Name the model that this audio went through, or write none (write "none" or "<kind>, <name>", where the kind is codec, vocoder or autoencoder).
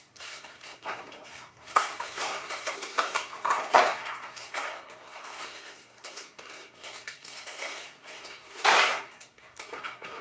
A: codec, SNAC